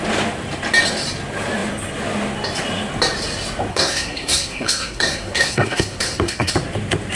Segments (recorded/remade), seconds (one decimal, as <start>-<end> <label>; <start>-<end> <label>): 0.0-3.7 recorded; 3.7-6.5 remade; 6.5-7.2 recorded